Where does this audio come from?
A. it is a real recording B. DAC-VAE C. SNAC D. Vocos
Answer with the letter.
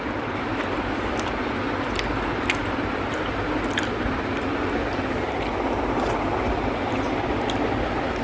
A